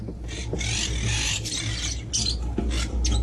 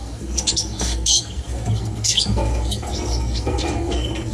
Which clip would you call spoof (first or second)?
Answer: second